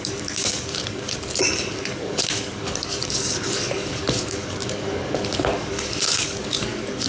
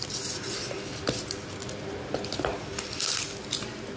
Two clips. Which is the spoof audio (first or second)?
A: first